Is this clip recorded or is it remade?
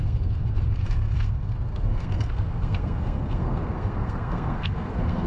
remade